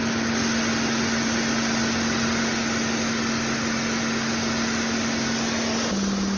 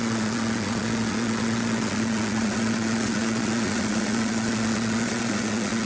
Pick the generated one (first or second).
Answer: second